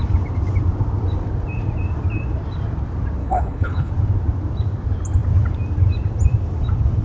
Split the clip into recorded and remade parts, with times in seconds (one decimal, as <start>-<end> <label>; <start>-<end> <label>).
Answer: 0.0-3.2 recorded; 3.2-3.9 remade; 3.9-7.0 recorded